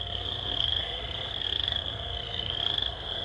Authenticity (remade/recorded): remade